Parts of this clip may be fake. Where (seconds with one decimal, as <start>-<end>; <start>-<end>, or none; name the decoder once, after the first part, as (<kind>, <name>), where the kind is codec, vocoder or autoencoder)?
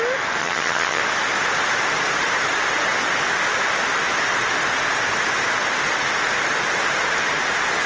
0.4-1.0 (vocoder, HiFi-GAN)